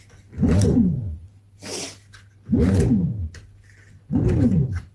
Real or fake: real